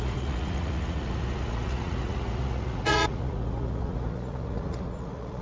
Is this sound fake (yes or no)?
yes